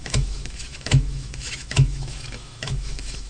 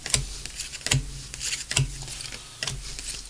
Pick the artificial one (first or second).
first